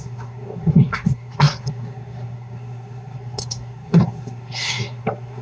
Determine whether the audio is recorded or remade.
remade